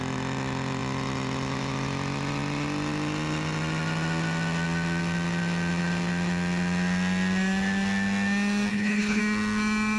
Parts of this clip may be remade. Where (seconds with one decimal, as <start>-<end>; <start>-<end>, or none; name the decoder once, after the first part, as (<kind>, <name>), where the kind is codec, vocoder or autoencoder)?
8.7-9.2 (codec, HILCodec)